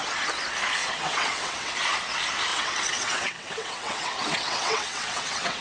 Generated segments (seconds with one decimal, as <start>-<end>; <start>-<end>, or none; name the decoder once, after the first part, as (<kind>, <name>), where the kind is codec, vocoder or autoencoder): 0.8-1.7 (vocoder, WaveNeXt); 2.5-5.6